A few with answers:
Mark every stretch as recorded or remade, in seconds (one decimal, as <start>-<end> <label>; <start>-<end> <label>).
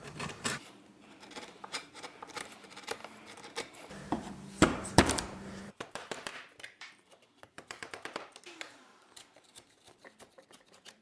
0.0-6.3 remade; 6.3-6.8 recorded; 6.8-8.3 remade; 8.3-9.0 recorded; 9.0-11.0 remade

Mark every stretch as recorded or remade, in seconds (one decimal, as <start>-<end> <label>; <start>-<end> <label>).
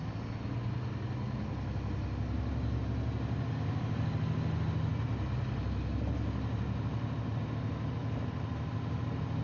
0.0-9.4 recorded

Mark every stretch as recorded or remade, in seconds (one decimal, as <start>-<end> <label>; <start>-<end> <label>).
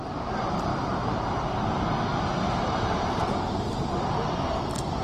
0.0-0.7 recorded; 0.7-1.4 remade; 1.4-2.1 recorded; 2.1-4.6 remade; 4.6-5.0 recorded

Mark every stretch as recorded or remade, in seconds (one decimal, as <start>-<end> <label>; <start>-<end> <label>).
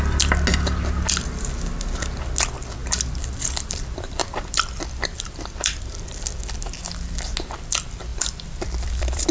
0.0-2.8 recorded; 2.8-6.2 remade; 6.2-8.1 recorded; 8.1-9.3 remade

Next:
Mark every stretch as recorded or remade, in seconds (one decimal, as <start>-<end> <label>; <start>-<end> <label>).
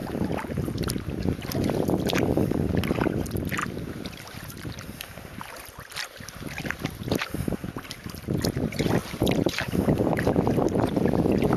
0.0-3.6 recorded; 3.6-5.4 remade; 5.4-9.0 recorded; 9.0-11.2 remade; 11.2-11.6 recorded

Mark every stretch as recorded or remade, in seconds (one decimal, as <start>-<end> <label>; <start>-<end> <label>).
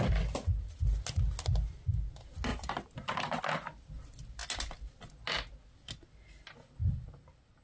0.0-2.5 recorded; 2.5-3.4 remade; 3.4-6.8 recorded; 6.8-7.6 remade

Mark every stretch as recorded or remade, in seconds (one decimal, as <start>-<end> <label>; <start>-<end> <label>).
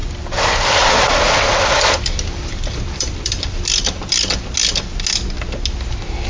0.0-2.3 recorded; 2.3-4.5 remade; 4.5-6.3 recorded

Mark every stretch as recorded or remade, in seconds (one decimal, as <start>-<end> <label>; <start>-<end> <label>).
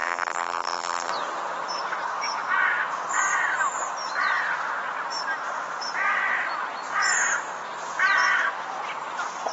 0.0-1.1 remade; 1.1-9.5 recorded